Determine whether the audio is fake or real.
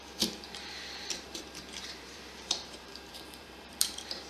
fake